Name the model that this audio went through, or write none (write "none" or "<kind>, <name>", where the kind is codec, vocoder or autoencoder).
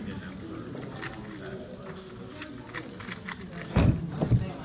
none